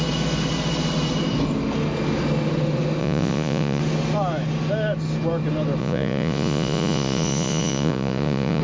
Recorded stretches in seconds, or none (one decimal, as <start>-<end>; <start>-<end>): 0.0-3.0; 3.8-5.8